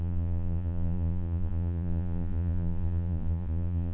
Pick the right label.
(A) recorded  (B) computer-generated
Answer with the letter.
B